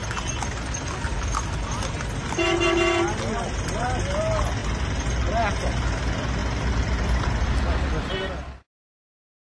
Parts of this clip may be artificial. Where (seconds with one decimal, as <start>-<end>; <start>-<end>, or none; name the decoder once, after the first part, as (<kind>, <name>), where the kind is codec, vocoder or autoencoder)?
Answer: none

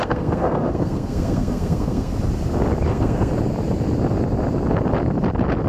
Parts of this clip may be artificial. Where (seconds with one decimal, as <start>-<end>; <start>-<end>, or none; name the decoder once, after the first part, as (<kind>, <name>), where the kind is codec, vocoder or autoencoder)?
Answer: 0.0-2.1 (codec, SNAC); 2.9-3.3

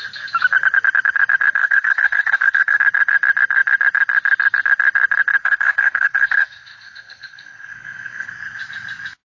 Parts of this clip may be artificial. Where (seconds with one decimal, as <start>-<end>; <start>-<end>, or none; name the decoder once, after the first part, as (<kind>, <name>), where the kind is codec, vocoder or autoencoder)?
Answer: 1.6-2.8 (codec, SNAC); 5.4-8.3

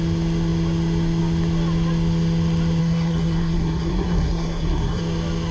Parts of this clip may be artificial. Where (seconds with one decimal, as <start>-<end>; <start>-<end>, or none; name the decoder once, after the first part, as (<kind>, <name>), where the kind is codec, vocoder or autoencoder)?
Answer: 2.8-5.0 (codec, SNAC)

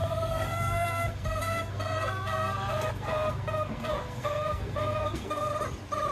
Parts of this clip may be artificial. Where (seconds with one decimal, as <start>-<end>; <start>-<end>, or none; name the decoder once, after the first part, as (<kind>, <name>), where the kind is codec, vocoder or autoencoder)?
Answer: 0.0-5.5 (codec, SNAC)

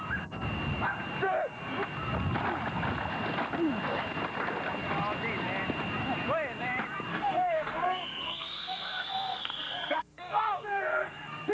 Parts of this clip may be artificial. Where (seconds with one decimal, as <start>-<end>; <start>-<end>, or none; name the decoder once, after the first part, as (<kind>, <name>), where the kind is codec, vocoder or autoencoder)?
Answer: 7.1-11.5 (codec, SNAC)

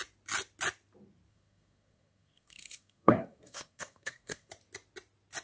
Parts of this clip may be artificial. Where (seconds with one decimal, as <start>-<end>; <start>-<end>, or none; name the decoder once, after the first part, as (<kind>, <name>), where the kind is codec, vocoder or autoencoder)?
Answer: 1.3-4.5 (codec, SNAC)

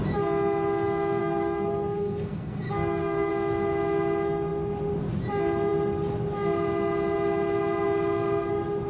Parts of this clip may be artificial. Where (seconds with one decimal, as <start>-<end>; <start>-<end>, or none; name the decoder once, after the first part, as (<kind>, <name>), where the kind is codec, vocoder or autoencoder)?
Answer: 1.2-3.3 (codec, SNAC)